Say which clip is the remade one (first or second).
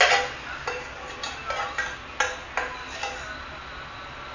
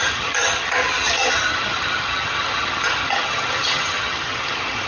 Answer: second